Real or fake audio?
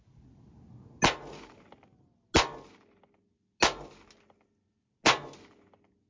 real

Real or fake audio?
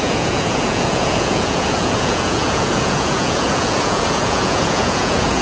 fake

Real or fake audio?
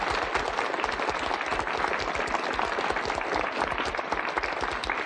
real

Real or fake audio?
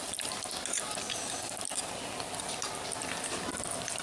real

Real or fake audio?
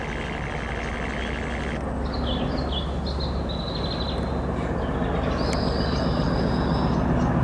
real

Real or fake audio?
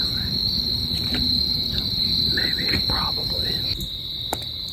real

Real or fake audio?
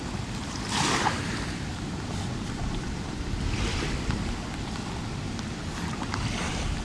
real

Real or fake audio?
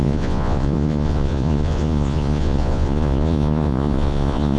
fake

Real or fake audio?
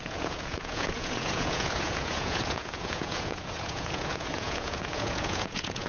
fake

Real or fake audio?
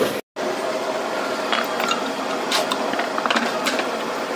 real